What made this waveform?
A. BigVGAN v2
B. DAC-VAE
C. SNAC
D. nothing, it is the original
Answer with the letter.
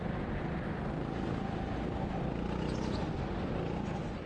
D